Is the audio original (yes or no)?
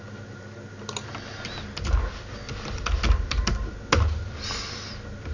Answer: yes